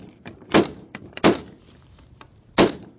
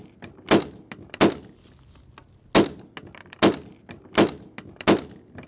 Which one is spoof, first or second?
first